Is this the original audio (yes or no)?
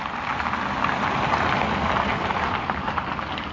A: yes